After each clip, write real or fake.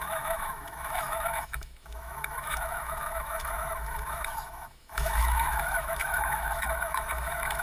fake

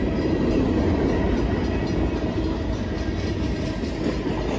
real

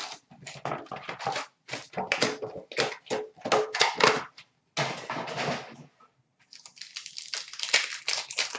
real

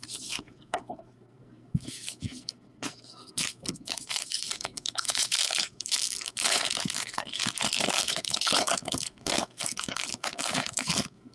fake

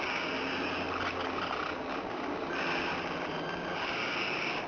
real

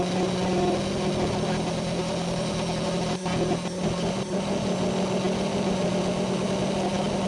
real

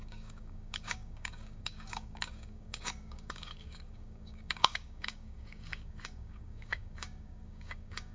fake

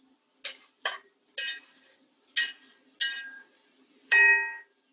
real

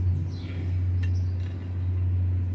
real